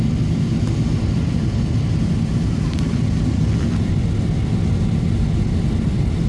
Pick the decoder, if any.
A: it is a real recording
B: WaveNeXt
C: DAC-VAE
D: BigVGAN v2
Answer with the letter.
A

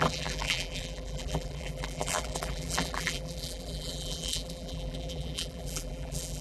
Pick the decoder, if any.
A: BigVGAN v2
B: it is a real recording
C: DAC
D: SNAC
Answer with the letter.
A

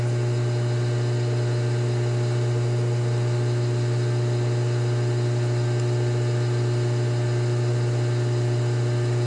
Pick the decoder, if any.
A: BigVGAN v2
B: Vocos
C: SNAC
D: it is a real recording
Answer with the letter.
D